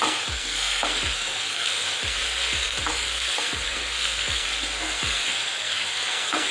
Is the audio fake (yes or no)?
yes